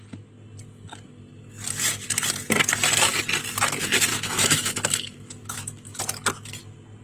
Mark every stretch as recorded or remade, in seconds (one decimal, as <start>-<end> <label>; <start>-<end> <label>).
0.0-4.1 recorded; 4.1-6.0 remade; 6.0-7.0 recorded